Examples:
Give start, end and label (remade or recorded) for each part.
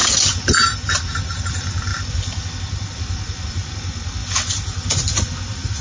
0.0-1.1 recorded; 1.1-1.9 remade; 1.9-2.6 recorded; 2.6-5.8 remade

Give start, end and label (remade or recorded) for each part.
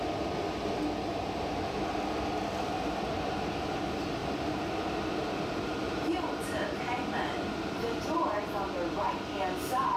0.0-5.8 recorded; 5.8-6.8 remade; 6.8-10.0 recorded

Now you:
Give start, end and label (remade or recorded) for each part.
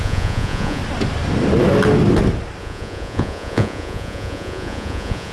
0.0-0.8 remade; 0.8-2.6 recorded; 2.6-5.3 remade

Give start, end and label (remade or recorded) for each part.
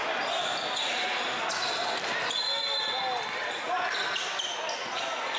0.0-5.4 recorded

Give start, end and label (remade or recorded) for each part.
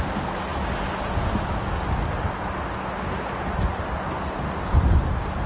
0.0-5.5 recorded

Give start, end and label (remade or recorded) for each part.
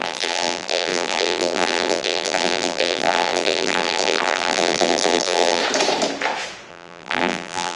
0.0-5.6 remade; 5.6-6.7 recorded; 6.7-7.8 remade